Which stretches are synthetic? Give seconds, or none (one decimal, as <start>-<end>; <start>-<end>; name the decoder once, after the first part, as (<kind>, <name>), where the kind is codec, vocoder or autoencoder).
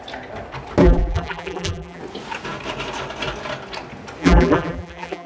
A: 0.8-2.0 (vocoder, BigVGAN v2); 4.2-5.3